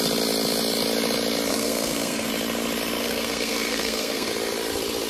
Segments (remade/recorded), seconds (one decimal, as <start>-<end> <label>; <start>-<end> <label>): 0.0-1.5 recorded; 1.5-2.3 remade; 2.3-3.0 recorded; 3.0-4.3 remade; 4.3-5.1 recorded